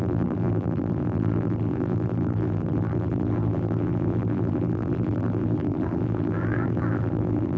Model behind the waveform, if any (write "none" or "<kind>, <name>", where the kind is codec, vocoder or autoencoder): vocoder, BigVGAN v2